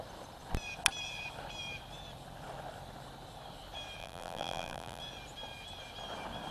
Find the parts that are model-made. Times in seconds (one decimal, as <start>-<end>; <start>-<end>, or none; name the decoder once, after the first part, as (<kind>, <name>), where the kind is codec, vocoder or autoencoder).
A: 4.0-5.0 (vocoder, BigVGAN v2)